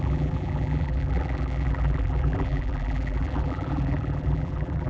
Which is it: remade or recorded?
remade